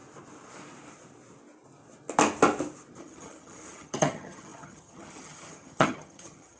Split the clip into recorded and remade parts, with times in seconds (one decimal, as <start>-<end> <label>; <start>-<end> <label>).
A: 0.0-3.0 recorded; 3.0-6.6 remade